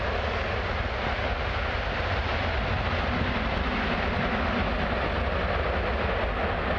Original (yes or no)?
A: yes